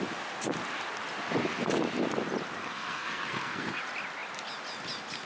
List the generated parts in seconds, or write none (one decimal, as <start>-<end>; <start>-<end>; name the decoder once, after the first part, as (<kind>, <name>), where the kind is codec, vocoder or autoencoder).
2.6-3.8 (codec, SNAC)